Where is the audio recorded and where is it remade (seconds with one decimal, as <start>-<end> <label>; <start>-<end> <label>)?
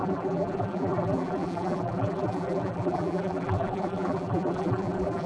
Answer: 0.0-5.3 remade